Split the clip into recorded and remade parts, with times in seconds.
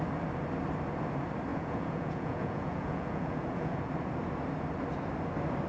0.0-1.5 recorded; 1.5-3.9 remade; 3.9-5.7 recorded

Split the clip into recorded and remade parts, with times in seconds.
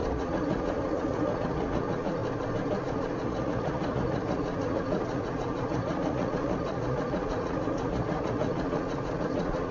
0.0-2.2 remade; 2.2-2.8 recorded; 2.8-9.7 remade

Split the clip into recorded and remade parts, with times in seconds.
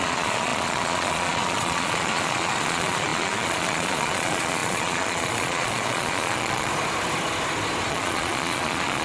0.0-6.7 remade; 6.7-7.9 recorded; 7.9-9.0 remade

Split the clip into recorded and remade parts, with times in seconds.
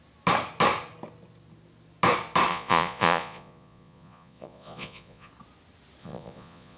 0.0-2.5 recorded; 2.5-5.3 remade; 5.3-6.0 recorded; 6.0-6.8 remade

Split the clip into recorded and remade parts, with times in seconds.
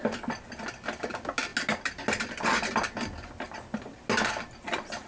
0.0-5.1 recorded